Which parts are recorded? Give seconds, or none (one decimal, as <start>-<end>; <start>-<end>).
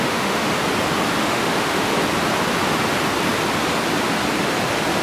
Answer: 0.5-1.2; 1.9-5.0